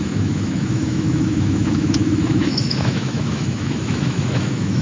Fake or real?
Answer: fake